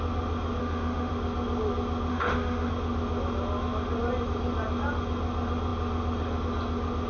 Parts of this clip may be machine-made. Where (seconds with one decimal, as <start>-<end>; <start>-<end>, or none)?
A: 0.6-1.1; 2.1-2.7